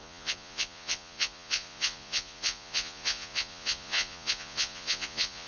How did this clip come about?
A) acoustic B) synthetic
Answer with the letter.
B